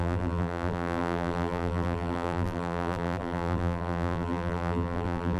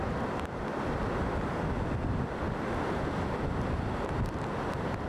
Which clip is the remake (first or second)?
first